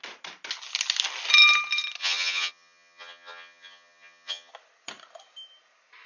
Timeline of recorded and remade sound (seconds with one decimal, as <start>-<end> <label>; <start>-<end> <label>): 0.0-2.0 recorded; 2.0-4.5 remade; 4.5-6.1 recorded